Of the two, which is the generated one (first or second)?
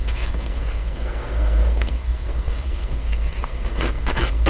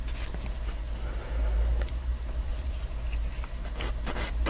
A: first